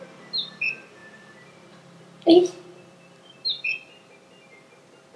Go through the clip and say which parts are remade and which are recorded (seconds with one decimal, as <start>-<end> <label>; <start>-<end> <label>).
0.0-1.0 recorded; 1.0-3.3 remade; 3.3-5.2 recorded